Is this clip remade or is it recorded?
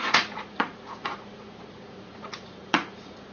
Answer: remade